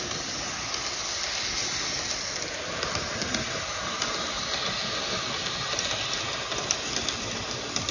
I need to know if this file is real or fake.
real